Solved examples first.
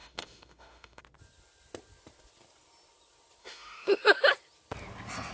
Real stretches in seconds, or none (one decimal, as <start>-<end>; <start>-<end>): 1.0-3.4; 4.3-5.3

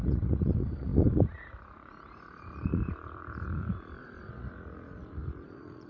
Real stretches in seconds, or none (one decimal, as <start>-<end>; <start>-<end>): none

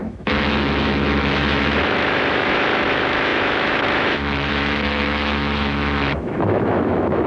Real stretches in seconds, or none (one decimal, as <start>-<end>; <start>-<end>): none

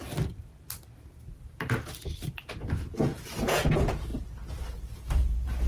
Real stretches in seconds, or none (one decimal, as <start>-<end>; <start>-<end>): 0.0-3.4; 4.1-4.7